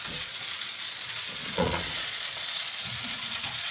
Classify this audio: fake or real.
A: fake